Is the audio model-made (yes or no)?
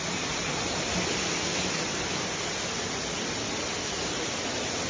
no